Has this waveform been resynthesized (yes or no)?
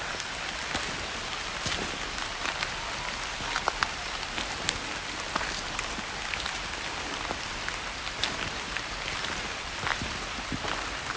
no